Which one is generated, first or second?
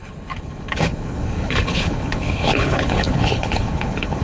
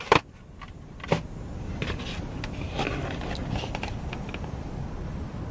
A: first